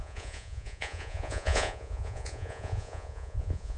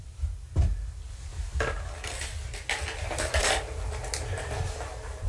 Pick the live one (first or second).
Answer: second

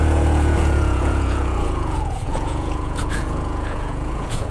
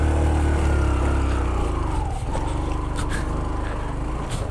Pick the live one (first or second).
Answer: second